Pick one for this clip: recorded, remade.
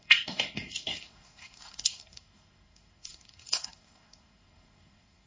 remade